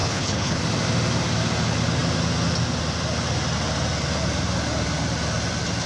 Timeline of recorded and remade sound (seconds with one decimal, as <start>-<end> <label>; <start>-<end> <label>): 0.0-0.6 remade; 0.6-5.9 recorded